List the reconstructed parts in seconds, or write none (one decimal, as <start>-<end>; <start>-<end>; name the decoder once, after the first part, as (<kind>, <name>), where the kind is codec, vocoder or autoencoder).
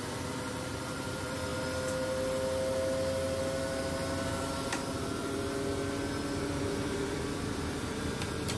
0.0-1.5 (vocoder, BigVGAN v2); 6.4-8.6